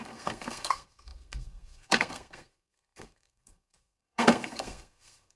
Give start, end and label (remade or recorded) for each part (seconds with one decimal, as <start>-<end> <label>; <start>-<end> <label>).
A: 0.0-5.4 remade

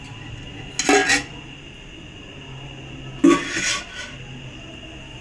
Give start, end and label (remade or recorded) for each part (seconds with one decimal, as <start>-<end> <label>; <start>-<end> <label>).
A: 0.0-5.2 recorded